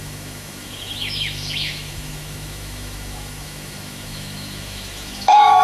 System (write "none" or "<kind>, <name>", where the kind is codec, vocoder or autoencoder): autoencoder, DAC-VAE